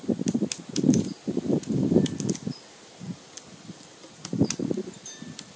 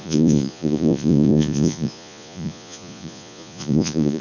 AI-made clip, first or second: second